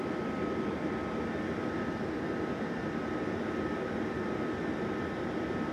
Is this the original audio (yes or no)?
yes